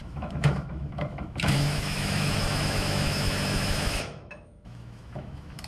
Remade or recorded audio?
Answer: remade